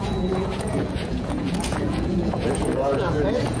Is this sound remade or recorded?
remade